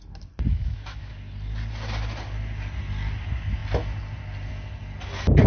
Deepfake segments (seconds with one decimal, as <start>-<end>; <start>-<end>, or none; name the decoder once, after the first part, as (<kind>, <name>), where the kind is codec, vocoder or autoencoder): 0.5-1.1 (autoencoder, DAC-VAE)